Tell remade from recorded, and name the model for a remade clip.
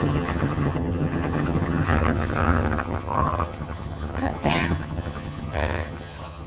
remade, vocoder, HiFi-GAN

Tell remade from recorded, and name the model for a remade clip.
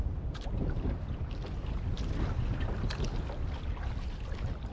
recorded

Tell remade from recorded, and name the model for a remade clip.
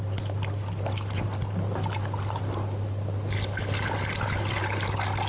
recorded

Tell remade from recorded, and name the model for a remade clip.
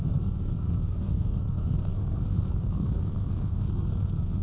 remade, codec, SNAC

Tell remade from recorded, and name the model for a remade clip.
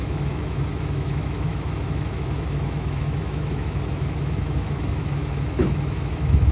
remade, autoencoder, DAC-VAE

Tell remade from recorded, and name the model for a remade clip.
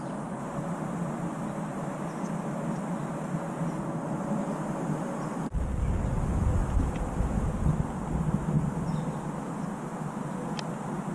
recorded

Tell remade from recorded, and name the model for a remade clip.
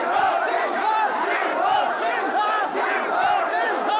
recorded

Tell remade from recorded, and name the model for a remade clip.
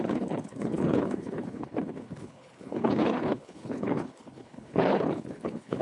remade, codec, HILCodec